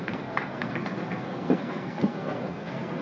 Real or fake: fake